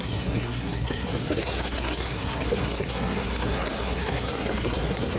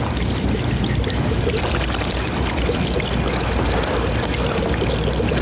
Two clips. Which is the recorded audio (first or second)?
second